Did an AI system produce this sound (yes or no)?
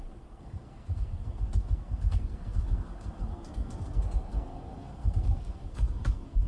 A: yes